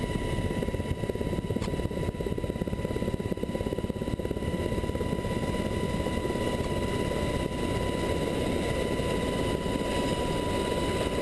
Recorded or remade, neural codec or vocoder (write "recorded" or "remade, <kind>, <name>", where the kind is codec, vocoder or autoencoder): recorded